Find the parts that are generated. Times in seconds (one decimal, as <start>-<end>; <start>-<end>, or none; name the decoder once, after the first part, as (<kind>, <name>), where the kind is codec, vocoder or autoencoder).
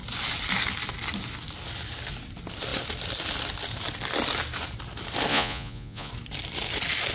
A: 5.3-6.1 (vocoder, Vocos)